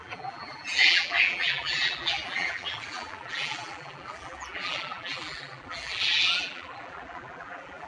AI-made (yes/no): yes